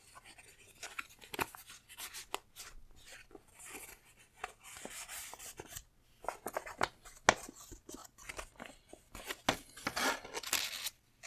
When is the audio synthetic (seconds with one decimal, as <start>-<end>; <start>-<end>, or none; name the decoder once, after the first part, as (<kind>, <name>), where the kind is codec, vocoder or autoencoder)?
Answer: none